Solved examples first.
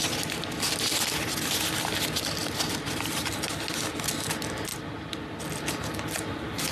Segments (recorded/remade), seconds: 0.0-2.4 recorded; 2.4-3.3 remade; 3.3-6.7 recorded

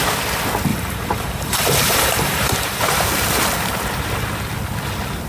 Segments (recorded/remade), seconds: 0.0-0.7 recorded; 0.7-2.8 remade; 2.8-5.3 recorded

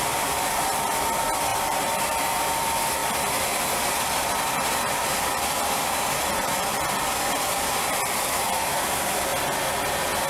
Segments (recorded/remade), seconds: 0.0-9.3 remade; 9.3-10.3 recorded

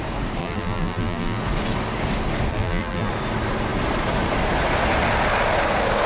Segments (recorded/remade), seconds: 0.0-0.4 recorded; 0.4-1.4 remade; 1.4-2.5 recorded; 2.5-3.1 remade; 3.1-6.1 recorded

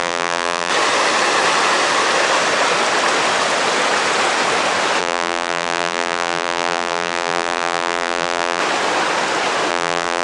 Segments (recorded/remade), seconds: 0.0-0.7 remade; 0.7-5.0 recorded; 5.0-8.6 remade; 8.6-9.7 recorded; 9.7-10.2 remade

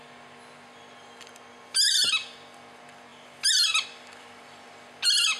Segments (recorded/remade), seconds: 0.0-5.4 recorded